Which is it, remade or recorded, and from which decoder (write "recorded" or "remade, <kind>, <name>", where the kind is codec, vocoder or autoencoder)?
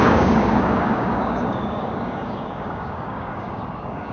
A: remade, codec, DAC